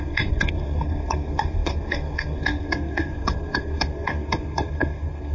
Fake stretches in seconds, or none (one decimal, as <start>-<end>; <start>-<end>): 0.0-5.3